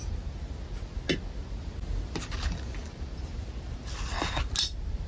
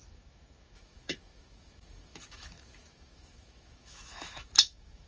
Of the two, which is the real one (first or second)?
first